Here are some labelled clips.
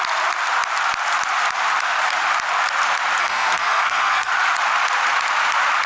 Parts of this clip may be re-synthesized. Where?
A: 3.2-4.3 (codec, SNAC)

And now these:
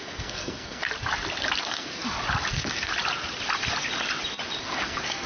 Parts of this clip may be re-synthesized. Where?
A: 0.0-0.8 (codec, SNAC); 1.6-2.0; 2.5-2.9; 4.6-5.3

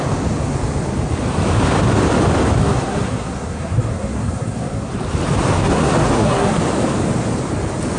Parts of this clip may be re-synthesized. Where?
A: 2.6-4.9 (codec, SNAC); 5.6-6.6

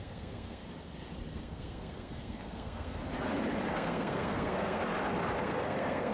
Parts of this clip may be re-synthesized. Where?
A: 0.0-0.6 (codec, SNAC); 1.3-3.0; 3.7-4.8; 5.4-6.1